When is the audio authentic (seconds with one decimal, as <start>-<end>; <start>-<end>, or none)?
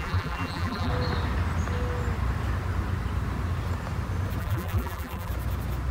0.9-4.4; 5.3-5.9